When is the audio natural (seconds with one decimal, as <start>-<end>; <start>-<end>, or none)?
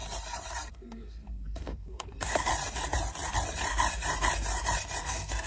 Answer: 0.0-0.7; 2.5-5.0